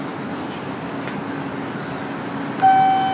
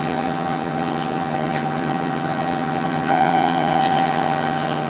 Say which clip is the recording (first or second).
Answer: first